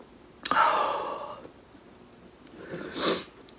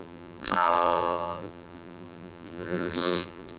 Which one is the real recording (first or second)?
first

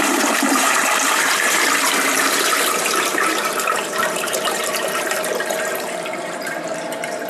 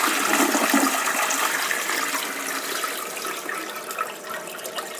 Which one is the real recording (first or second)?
second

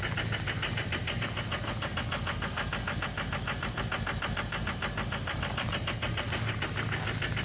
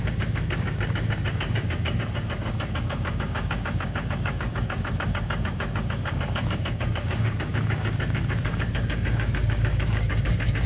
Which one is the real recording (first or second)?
first